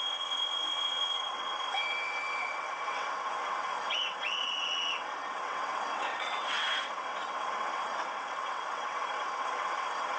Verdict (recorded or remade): remade